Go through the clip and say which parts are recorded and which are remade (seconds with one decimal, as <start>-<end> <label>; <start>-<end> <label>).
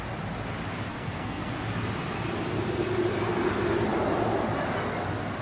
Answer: 0.0-0.9 recorded; 0.9-1.5 remade; 1.5-5.4 recorded